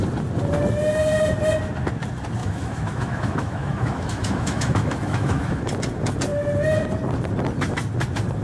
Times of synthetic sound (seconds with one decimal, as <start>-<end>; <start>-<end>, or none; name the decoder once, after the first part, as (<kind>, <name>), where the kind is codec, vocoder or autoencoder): 2.4-5.6 (autoencoder, DAC-VAE)